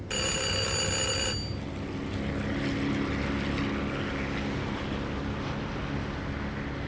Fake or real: real